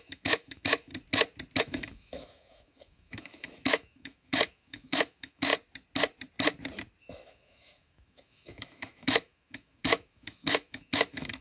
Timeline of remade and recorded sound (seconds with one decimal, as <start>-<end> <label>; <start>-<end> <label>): 0.0-0.9 remade; 0.9-1.6 recorded; 1.6-5.5 remade; 5.5-7.0 recorded; 7.0-11.4 remade